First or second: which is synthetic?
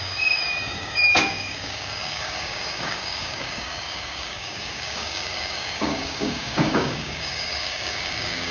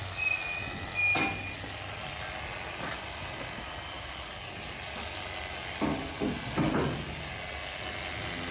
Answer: first